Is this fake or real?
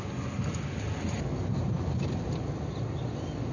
real